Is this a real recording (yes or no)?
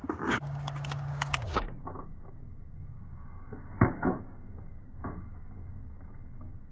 no